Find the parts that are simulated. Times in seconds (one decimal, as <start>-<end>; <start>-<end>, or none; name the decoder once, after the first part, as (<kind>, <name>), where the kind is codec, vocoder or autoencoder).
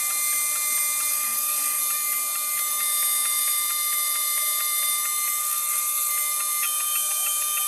1.1-1.8 (codec, SNAC); 5.4-6.1